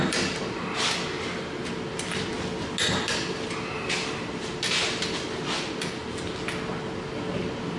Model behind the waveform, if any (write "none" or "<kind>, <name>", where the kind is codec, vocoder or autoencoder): none